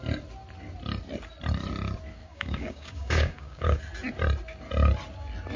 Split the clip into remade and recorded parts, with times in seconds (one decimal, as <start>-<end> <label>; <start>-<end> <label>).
0.0-2.2 recorded; 2.2-3.8 remade; 3.8-5.6 recorded